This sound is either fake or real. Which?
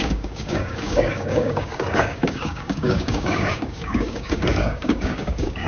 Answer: fake